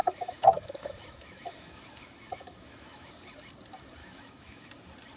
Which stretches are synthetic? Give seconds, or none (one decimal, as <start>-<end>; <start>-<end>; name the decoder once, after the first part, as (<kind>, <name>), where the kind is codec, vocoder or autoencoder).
0.0-3.1 (autoencoder, DAC-VAE); 4.0-4.7